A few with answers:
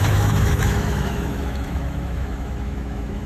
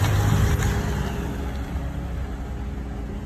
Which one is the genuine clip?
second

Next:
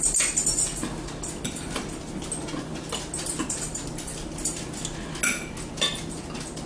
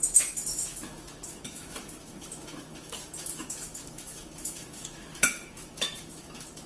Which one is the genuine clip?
first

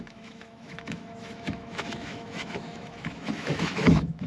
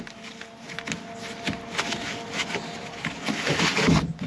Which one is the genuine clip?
second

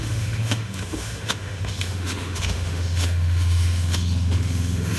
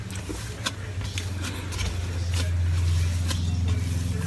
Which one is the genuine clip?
second